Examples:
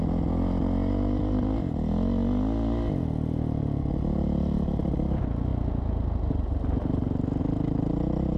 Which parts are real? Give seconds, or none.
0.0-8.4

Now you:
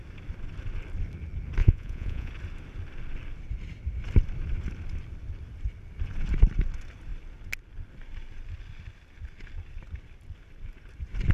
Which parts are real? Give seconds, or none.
0.0-1.6; 2.3-11.3

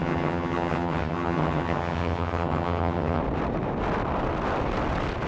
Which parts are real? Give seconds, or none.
3.2-5.3

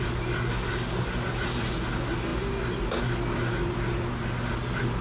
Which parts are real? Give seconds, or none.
0.0-5.0

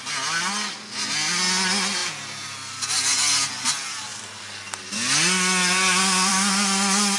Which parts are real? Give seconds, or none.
0.0-7.2

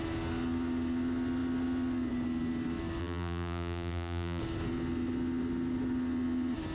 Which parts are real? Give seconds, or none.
0.0-3.0; 4.4-6.7

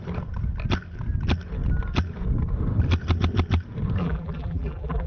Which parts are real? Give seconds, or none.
0.0-4.0

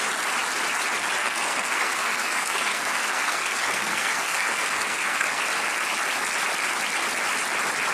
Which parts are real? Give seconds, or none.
0.0-1.2; 5.4-7.9